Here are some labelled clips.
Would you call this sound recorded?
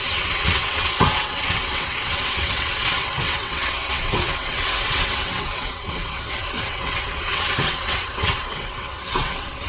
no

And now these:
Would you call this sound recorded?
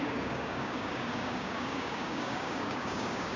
no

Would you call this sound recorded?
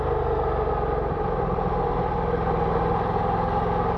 yes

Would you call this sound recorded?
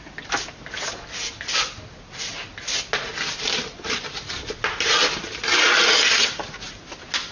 yes